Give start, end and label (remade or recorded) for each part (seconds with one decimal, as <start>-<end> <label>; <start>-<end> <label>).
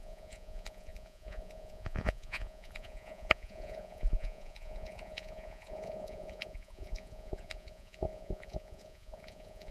0.0-9.7 remade